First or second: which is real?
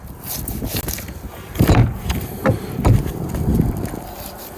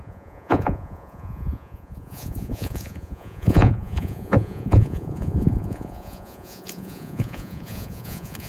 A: first